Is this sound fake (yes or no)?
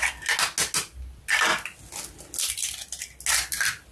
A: no